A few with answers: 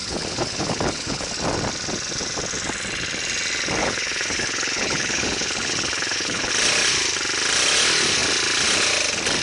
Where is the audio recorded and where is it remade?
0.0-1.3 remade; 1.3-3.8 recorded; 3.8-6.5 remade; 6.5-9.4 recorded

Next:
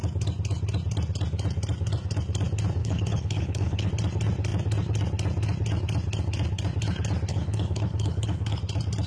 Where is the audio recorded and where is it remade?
0.0-2.8 recorded; 2.8-3.9 remade; 3.9-7.3 recorded; 7.3-8.6 remade; 8.6-9.1 recorded

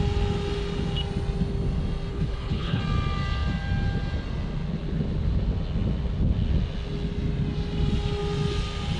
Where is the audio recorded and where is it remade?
0.0-2.1 recorded; 2.1-2.8 remade; 2.8-9.0 recorded

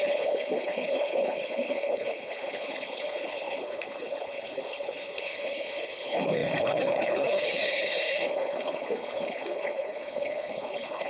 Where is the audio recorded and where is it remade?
0.0-11.1 remade

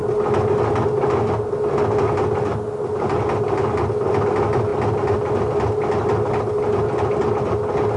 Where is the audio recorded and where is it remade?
0.0-8.0 recorded